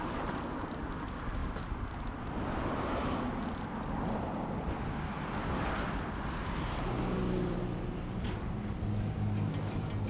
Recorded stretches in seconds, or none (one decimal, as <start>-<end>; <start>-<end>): 0.0-10.1